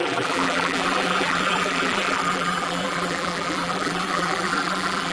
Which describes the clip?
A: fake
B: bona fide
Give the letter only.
A